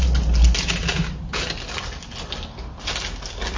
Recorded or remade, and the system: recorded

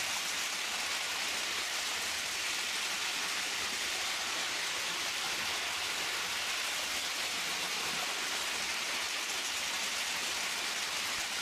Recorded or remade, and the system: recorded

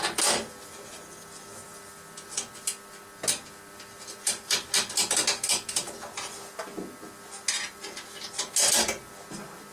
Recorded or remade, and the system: recorded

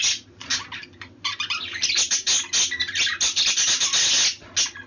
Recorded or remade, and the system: recorded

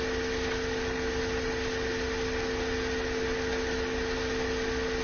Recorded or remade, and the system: recorded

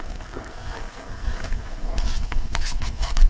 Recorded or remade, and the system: remade, codec, SNAC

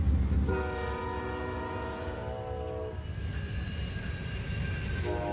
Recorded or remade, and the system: recorded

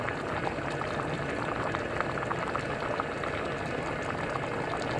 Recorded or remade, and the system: recorded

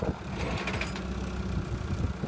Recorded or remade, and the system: recorded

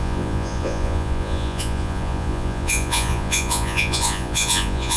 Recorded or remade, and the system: remade, vocoder, Vocos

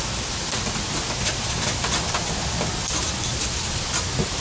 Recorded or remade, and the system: recorded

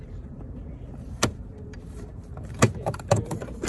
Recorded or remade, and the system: remade, vocoder, BigVGAN v2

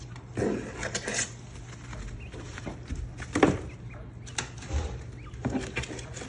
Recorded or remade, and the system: recorded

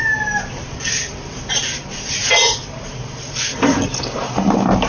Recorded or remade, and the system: recorded